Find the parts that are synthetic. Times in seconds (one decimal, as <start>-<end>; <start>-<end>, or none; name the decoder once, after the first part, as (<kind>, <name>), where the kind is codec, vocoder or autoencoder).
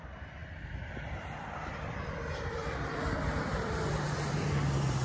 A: 0.0-5.0 (vocoder, BigVGAN v2)